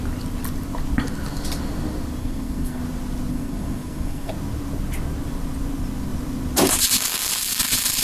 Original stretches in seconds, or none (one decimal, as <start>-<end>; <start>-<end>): 0.0-2.2; 2.8-3.3; 4.3-8.0

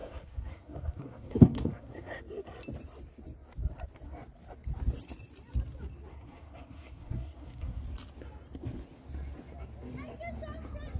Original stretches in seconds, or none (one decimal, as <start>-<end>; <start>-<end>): 2.2-6.1; 7.8-11.0

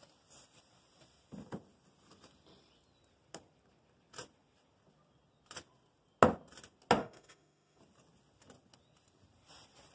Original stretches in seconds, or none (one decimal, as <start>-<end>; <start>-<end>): 0.0-7.0; 7.8-9.9